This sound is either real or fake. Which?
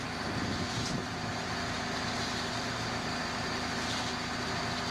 real